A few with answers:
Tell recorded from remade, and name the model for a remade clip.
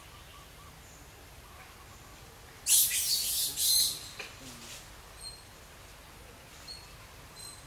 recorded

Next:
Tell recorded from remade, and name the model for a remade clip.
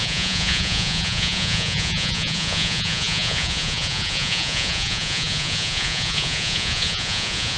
remade, vocoder, Vocos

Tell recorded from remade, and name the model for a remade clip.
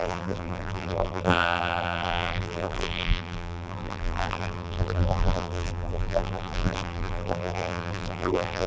remade, vocoder, BigVGAN v2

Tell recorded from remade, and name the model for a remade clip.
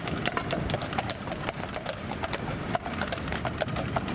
recorded